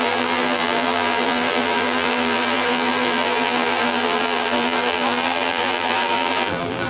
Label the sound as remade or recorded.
remade